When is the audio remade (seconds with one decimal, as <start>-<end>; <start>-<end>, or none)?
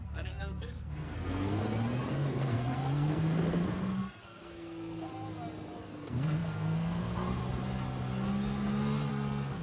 0.0-1.6; 2.1-5.1; 5.8-7.4; 9.1-9.6